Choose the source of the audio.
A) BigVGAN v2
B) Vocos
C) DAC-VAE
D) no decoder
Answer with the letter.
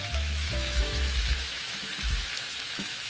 C